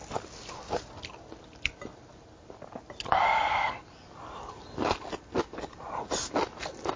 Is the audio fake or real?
real